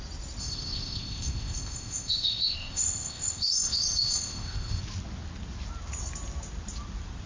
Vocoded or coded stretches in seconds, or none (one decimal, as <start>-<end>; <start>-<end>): 0.4-4.8